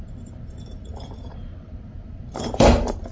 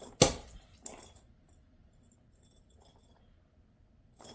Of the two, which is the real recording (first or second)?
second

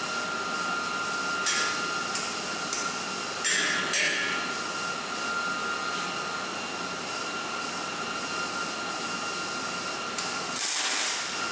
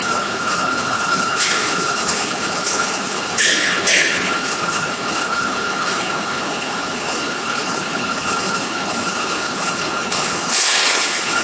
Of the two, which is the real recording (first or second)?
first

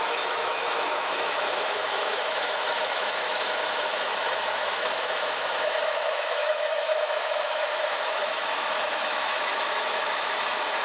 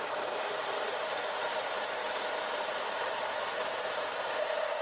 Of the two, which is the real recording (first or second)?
second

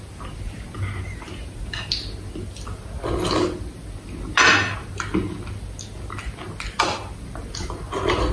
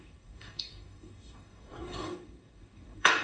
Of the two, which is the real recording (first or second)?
first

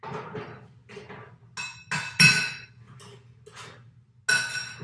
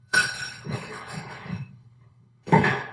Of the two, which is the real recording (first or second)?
first